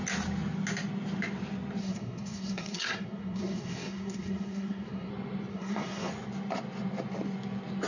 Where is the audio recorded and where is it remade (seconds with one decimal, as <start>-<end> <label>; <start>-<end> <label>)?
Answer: 0.0-1.8 recorded; 1.8-5.1 remade; 5.1-5.5 recorded; 5.5-6.1 remade; 6.1-7.9 recorded